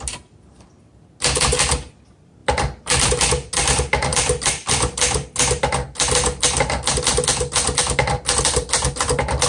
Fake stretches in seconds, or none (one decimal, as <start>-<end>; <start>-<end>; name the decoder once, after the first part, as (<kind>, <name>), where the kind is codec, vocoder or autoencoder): none